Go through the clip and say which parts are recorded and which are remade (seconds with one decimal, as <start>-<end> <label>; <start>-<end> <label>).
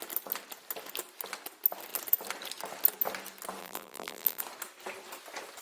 0.0-3.6 recorded; 3.6-4.4 remade; 4.4-5.6 recorded